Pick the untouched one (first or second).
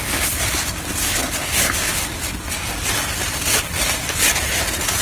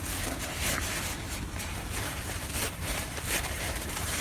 first